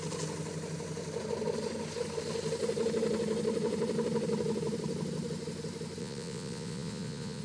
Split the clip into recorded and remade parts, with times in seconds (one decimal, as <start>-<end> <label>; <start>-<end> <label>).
0.0-6.0 recorded; 6.0-7.4 remade